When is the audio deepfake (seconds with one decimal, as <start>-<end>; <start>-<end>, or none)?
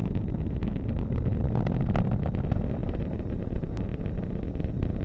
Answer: 0.0-0.9; 1.3-2.0; 2.8-3.8